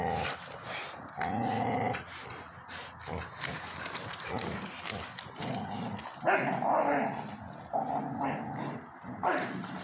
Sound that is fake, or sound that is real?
real